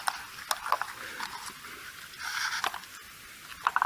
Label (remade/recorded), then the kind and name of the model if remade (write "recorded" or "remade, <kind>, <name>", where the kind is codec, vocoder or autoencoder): recorded